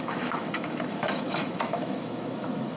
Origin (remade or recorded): remade